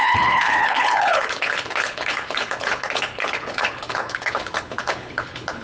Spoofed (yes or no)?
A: yes